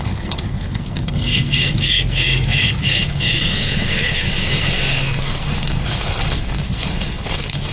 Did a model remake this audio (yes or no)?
yes